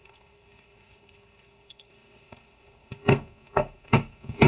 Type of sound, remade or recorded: remade